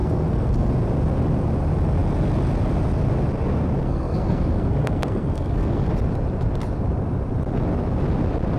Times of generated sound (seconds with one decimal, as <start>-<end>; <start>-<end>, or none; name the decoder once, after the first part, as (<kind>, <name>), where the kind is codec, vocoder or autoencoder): 0.0-0.7 (codec, SNAC); 3.8-5.9